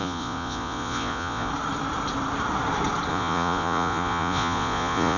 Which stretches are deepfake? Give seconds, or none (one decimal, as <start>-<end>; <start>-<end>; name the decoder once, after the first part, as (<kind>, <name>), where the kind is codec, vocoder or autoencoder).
0.0-1.5 (vocoder, Vocos); 3.1-5.2